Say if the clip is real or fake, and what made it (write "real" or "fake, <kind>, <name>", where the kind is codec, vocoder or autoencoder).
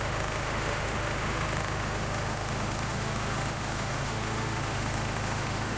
fake, autoencoder, DAC-VAE